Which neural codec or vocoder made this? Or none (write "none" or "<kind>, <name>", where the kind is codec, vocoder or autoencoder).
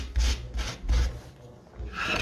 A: none